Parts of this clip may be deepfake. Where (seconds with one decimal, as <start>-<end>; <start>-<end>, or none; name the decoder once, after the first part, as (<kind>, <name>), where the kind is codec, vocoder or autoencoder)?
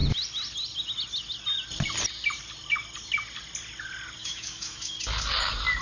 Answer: 4.2-4.9 (autoencoder, DAC-VAE)